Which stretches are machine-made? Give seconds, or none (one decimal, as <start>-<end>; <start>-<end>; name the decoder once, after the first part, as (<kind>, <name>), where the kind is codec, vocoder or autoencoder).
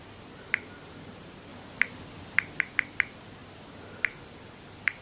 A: 0.0-1.5 (vocoder, BigVGAN v2); 2.6-5.0